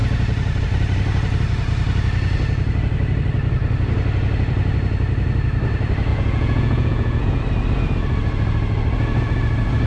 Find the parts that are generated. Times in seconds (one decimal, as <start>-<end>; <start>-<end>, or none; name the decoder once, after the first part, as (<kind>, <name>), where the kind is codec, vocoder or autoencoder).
6.1-7.4 (vocoder, Vocos)